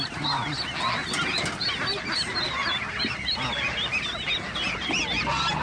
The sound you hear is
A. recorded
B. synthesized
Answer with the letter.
A